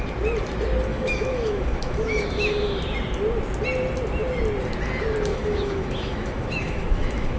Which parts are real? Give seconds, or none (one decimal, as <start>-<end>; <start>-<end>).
0.0-0.9; 2.8-5.3